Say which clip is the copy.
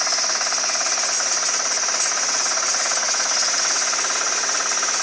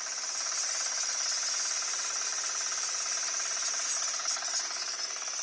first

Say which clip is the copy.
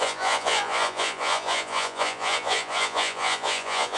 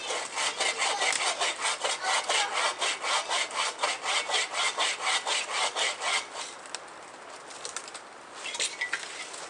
first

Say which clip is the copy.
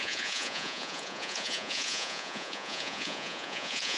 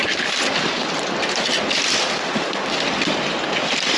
first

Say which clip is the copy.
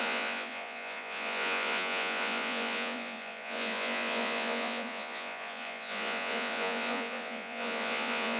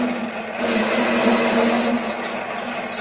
first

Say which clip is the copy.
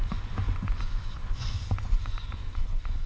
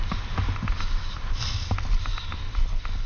first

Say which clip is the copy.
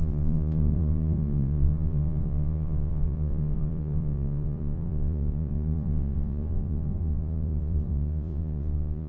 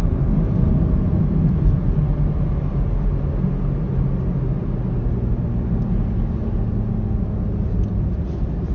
first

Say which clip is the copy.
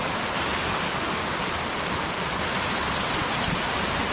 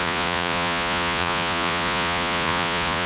second